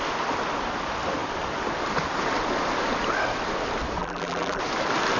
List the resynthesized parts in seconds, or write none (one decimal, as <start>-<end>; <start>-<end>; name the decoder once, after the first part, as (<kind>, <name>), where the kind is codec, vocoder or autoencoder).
4.0-4.6 (vocoder, BigVGAN v2)